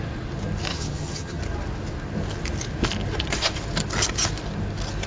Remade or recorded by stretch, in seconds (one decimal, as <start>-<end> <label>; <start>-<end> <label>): 0.0-0.7 recorded; 0.7-1.4 remade; 1.4-5.1 recorded